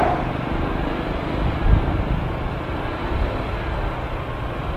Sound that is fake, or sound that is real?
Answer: real